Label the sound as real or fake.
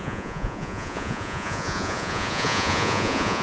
fake